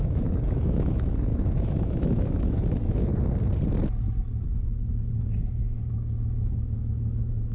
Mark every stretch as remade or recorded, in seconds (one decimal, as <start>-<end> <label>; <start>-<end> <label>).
0.0-3.1 remade; 3.1-5.5 recorded; 5.5-7.5 remade